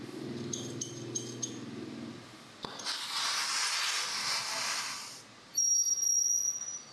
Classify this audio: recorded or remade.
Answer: recorded